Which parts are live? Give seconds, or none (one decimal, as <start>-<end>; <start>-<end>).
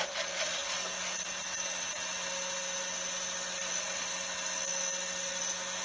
0.0-5.8